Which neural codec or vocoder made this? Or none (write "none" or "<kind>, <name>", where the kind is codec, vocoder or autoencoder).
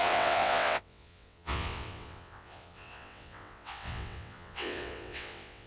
vocoder, WaveNeXt